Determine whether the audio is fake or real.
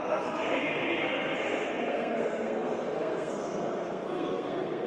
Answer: fake